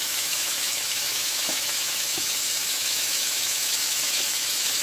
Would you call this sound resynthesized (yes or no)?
yes